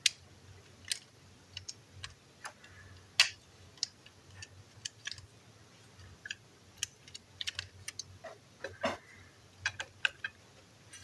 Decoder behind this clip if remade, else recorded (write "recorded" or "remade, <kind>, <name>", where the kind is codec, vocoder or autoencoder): recorded